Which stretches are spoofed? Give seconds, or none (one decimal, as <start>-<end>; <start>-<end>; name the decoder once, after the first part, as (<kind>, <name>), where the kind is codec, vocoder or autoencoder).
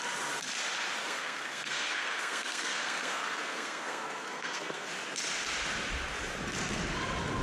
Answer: 1.0-4.9 (codec, SNAC)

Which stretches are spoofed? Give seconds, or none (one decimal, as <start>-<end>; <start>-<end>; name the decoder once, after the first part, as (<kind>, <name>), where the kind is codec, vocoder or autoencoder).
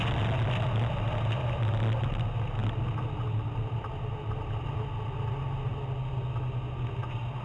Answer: none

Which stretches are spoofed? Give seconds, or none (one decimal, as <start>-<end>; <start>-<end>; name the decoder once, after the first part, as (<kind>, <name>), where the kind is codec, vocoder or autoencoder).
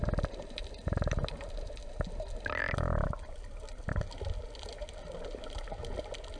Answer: none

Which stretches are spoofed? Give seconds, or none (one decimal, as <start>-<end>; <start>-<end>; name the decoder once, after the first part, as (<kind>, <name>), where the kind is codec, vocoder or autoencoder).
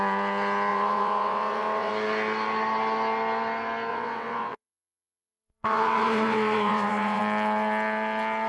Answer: 0.7-1.9 (vocoder, WaveNeXt); 3.9-7.2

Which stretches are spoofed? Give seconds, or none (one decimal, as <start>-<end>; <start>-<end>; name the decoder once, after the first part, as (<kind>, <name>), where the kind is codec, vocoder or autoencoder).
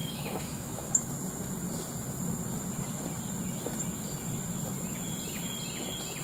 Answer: 0.0-1.1 (autoencoder, DAC-VAE)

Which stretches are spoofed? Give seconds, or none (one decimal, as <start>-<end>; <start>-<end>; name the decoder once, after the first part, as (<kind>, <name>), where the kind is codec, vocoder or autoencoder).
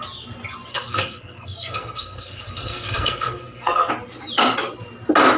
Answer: 0.7-3.9 (codec, SNAC)